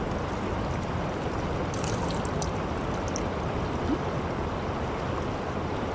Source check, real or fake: real